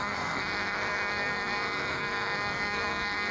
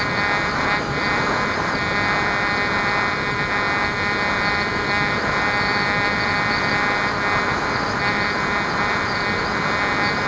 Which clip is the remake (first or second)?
first